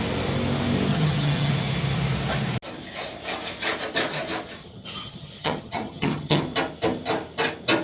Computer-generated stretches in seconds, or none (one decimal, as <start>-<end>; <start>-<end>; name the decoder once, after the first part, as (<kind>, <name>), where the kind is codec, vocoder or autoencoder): 0.9-1.5 (vocoder, HiFi-GAN); 4.6-6.4